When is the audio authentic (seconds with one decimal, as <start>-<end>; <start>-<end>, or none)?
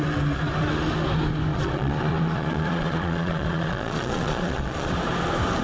0.0-1.5; 4.9-5.6